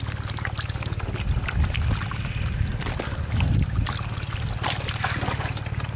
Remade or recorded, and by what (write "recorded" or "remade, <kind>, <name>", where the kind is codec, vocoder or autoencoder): recorded